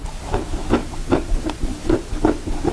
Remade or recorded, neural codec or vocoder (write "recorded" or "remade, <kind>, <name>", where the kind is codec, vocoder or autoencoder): recorded